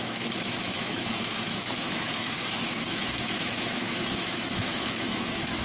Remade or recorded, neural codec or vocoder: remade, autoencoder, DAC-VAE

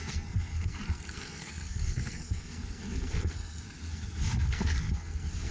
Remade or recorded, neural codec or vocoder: remade, codec, SNAC